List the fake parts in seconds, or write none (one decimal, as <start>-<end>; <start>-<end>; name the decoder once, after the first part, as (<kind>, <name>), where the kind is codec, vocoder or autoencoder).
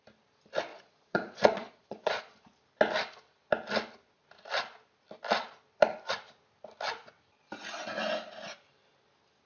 0.7-2.2 (vocoder, Vocos)